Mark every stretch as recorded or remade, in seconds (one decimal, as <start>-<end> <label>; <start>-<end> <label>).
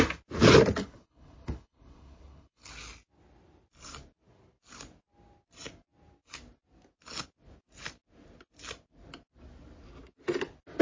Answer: 0.0-0.8 recorded; 0.8-2.7 remade; 2.7-10.8 recorded